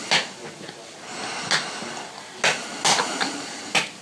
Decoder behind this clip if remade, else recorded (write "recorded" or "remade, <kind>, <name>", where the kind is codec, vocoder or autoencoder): recorded